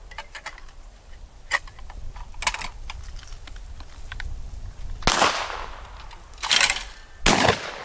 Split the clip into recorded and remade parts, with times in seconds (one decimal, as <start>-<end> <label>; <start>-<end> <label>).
0.0-7.8 recorded